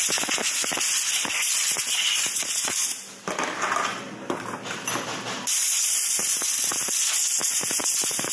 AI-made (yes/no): no